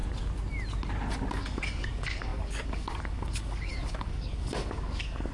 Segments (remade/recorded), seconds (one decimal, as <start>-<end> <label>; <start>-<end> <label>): 0.0-1.3 recorded; 1.3-5.3 remade